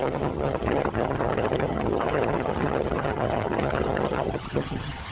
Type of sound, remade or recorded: remade